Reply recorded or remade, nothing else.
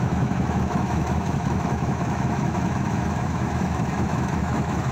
remade